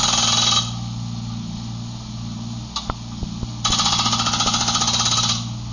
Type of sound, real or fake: real